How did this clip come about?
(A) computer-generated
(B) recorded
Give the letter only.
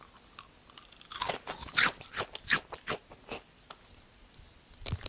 B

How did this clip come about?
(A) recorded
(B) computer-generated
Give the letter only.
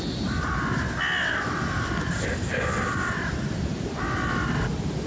A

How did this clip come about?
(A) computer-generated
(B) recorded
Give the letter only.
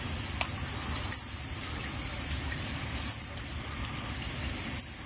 B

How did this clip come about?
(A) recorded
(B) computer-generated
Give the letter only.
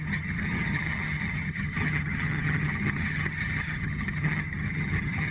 B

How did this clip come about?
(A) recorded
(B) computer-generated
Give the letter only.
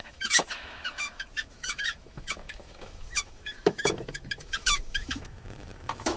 B